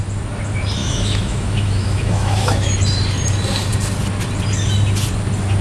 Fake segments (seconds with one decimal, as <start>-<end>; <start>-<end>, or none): 0.8-2.7